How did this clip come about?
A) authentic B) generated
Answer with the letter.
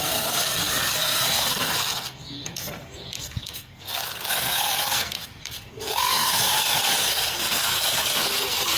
B